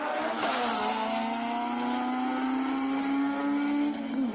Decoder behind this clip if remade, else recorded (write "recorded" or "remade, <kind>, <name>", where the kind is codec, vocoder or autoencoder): recorded